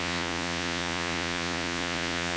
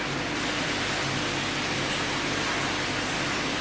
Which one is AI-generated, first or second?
first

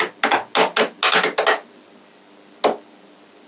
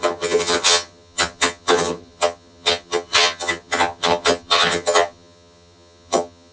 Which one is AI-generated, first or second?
second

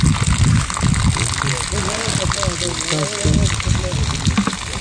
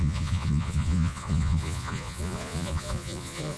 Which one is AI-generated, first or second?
second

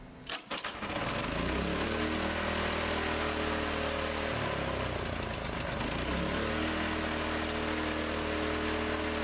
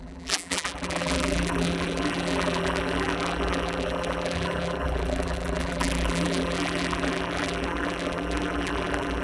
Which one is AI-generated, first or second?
second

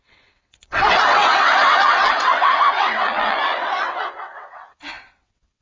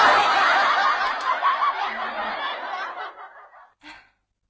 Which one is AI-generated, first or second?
first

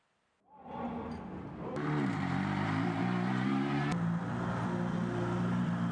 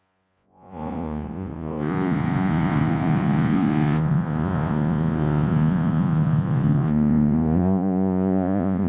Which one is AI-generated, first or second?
second